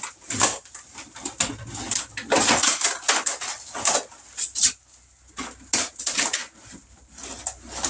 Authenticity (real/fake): real